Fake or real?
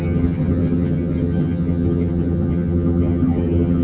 fake